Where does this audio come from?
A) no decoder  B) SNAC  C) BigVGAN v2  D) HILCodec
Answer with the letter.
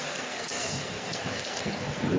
B